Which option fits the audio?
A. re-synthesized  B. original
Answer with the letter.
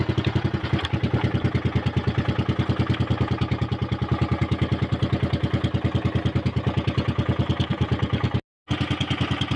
B